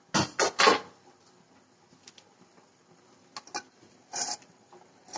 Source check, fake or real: real